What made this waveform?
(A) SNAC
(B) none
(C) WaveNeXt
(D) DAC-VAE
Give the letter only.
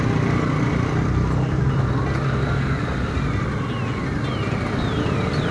B